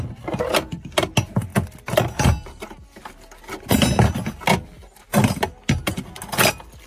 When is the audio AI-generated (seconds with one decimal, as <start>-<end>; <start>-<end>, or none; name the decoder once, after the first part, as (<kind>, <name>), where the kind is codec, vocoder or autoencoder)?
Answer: none